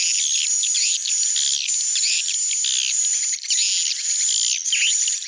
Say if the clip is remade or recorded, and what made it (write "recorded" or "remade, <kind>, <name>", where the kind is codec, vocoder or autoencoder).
recorded